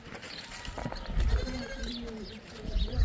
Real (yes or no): yes